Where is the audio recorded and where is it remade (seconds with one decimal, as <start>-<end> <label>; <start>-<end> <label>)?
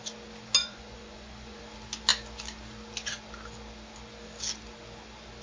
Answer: 0.0-0.6 recorded; 0.6-1.6 remade; 1.6-5.4 recorded